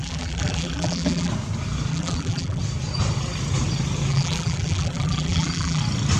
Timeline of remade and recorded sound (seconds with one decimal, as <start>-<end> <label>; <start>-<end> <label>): 0.0-1.3 remade; 1.3-1.9 recorded; 1.9-2.6 remade; 2.6-4.1 recorded; 4.1-5.8 remade; 5.8-6.2 recorded